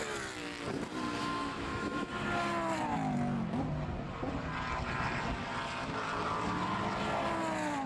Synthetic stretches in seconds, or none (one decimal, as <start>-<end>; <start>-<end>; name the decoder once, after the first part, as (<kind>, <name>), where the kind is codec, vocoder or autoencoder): 1.2-2.1 (autoencoder, DAC-VAE)